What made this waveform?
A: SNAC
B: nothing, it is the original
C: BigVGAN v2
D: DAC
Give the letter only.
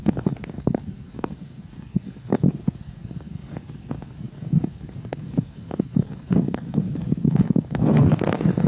A